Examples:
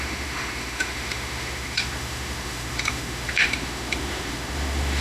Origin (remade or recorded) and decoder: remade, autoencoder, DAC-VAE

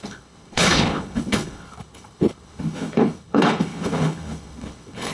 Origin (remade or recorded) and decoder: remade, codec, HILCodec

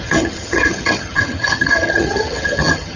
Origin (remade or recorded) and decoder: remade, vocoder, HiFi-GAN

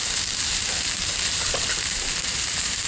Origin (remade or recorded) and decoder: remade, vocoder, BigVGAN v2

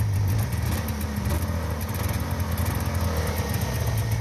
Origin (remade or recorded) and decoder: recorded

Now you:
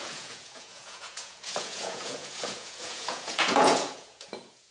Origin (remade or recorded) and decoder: remade, vocoder, Vocos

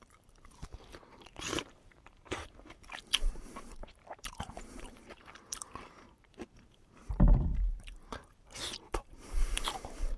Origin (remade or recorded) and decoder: remade, vocoder, BigVGAN v2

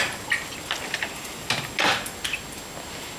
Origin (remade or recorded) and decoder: recorded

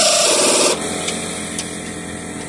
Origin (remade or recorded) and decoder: recorded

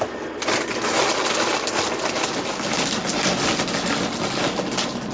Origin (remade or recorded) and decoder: recorded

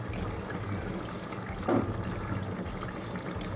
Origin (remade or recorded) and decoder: recorded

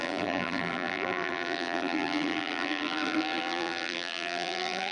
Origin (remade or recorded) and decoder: remade, vocoder, BigVGAN v2